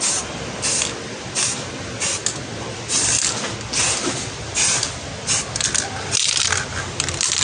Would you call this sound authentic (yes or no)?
yes